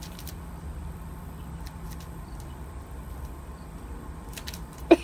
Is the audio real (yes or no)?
no